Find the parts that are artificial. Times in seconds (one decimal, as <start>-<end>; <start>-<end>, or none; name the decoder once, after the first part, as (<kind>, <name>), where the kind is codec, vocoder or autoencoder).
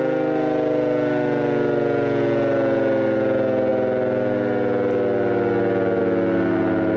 none